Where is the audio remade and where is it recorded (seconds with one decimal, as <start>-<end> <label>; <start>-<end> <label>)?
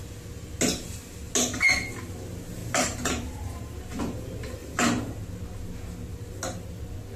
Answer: 0.0-2.6 recorded; 2.6-3.8 remade; 3.8-4.6 recorded; 4.6-5.2 remade; 5.2-7.2 recorded